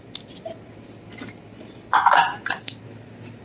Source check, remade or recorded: recorded